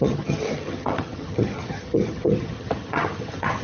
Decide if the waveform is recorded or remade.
remade